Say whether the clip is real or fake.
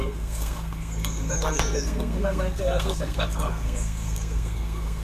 fake